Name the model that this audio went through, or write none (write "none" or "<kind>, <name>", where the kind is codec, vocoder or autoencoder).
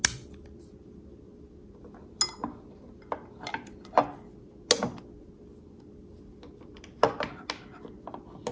none